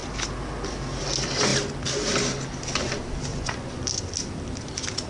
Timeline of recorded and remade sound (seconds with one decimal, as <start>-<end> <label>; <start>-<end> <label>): 0.0-3.3 recorded; 3.3-3.8 remade; 3.8-5.1 recorded